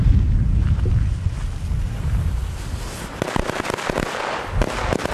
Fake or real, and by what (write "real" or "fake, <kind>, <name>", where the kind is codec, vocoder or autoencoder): real